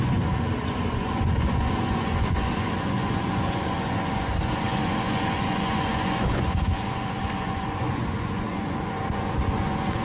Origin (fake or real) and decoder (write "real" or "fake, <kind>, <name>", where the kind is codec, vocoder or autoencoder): fake, vocoder, Vocos